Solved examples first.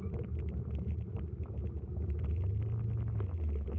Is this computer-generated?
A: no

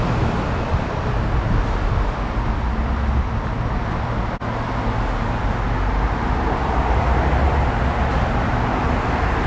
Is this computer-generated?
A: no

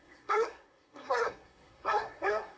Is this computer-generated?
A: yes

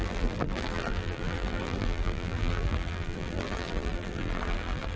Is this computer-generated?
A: yes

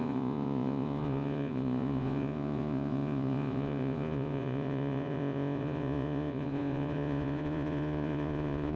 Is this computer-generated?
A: yes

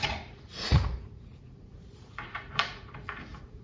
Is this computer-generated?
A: yes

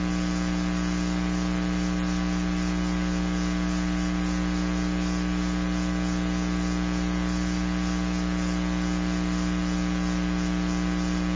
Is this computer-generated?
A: no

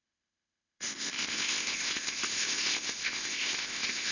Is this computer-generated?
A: yes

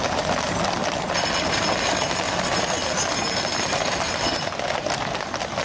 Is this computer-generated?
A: no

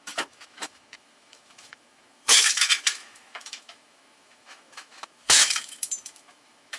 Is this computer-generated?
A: yes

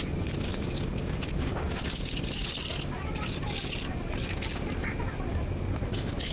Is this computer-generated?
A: no